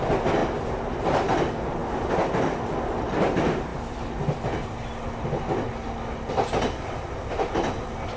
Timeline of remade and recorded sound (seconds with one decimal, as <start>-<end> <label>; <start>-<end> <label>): 0.0-8.2 recorded